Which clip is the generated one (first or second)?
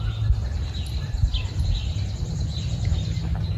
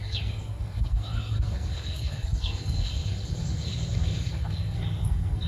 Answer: second